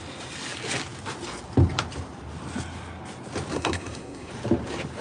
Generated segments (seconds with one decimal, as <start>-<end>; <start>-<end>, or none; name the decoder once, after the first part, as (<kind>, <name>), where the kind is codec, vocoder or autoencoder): 3.5-4.3 (codec, SNAC)